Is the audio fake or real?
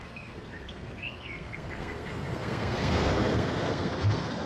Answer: fake